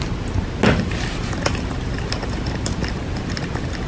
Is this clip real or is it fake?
real